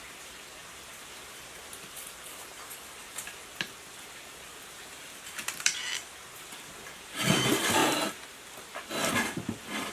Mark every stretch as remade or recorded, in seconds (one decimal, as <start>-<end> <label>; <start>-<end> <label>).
0.0-7.8 remade; 7.8-9.1 recorded; 9.1-9.9 remade